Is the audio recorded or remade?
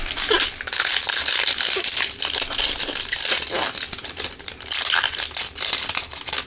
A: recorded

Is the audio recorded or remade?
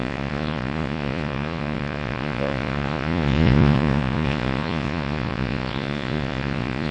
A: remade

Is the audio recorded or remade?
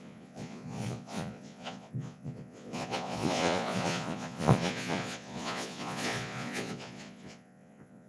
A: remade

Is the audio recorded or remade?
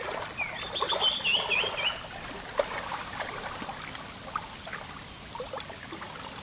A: recorded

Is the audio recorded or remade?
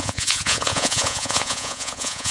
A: remade